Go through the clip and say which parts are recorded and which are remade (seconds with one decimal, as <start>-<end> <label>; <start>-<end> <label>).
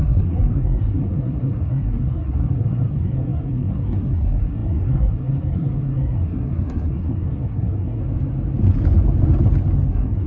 0.0-8.0 remade; 8.0-9.9 recorded; 9.9-10.3 remade